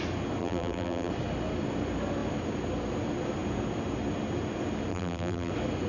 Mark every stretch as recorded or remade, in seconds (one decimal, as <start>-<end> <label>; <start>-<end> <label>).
0.0-0.4 recorded; 0.4-1.1 remade; 1.1-4.9 recorded; 4.9-5.5 remade; 5.5-5.9 recorded